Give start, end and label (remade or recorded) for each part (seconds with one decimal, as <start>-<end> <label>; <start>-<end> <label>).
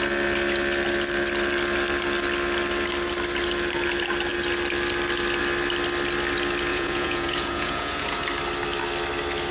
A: 0.0-6.7 recorded; 6.7-8.2 remade; 8.2-9.5 recorded